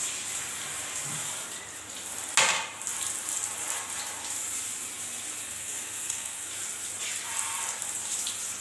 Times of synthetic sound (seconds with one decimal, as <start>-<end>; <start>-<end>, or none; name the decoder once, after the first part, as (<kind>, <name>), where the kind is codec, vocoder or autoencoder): 5.4-6.5 (codec, SNAC)

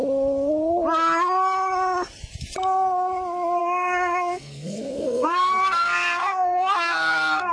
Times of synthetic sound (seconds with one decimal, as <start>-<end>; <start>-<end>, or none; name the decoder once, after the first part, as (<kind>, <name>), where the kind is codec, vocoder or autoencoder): 3.6-7.5 (codec, SNAC)

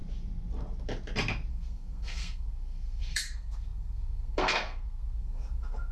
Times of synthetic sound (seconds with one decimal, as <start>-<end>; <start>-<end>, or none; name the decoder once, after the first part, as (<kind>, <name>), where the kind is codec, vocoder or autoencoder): 1.5-5.9 (codec, SNAC)

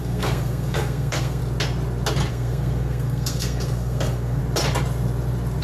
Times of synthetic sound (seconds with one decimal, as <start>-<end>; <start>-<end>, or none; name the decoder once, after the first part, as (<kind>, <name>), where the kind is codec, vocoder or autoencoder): 0.0-1.4 (codec, SNAC); 2.3-4.4

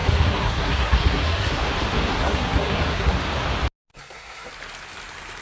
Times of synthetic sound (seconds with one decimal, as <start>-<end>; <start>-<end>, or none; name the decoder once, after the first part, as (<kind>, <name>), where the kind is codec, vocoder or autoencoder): 0.0-1.6 (codec, SNAC); 2.1-3.2; 3.9-4.5

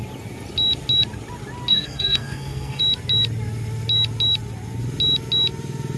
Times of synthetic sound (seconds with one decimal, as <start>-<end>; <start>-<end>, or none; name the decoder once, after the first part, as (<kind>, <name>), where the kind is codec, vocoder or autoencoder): 1.7-2.8 (codec, SNAC)

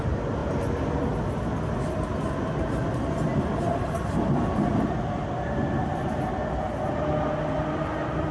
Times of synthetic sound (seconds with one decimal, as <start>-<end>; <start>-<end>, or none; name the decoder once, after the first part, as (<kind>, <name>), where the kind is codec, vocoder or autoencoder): none